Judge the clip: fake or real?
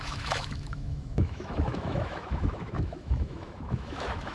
fake